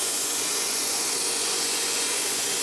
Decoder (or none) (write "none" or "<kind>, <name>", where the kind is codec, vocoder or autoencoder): vocoder, Vocos